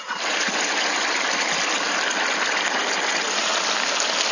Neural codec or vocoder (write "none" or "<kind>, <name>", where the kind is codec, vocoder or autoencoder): none